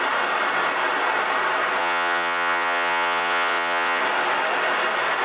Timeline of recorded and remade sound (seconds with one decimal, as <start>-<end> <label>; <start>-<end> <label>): 0.0-1.8 recorded; 1.8-4.0 remade; 4.0-5.2 recorded